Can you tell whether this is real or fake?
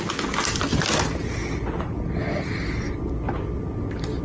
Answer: real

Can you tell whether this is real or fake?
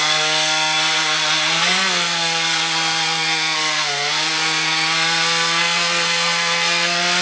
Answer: fake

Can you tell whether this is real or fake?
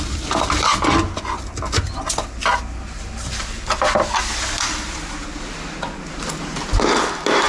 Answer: real